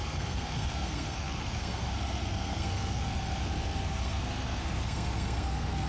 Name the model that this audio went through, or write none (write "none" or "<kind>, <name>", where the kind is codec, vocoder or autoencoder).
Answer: codec, SNAC